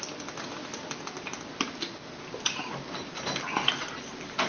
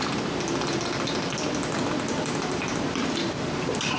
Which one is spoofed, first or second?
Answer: second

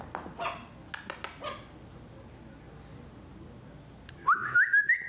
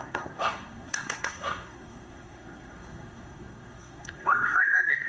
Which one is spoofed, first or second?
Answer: second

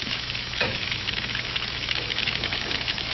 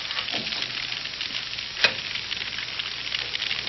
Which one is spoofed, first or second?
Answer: first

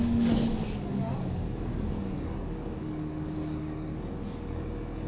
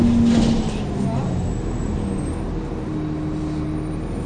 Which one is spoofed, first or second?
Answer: first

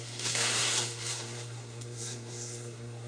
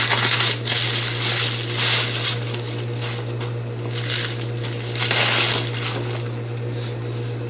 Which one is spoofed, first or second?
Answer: first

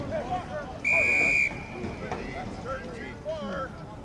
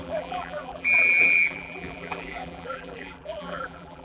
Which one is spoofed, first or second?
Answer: second